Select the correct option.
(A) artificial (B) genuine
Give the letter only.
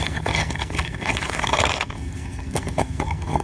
A